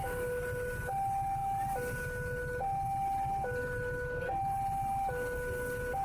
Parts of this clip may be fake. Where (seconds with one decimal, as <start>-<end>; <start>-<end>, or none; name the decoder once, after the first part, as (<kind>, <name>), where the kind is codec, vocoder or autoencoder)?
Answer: none